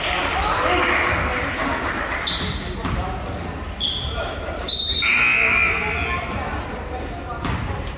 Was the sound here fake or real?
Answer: real